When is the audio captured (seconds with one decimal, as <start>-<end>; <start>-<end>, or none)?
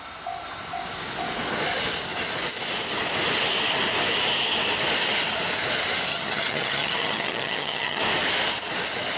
0.0-6.1; 8.0-9.2